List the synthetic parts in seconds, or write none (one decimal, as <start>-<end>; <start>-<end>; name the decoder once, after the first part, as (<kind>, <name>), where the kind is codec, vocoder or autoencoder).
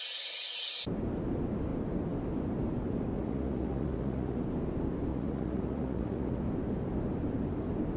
3.1-4.4 (vocoder, Vocos); 5.1-6.4